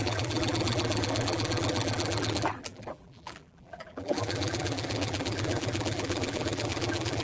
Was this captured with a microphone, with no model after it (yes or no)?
no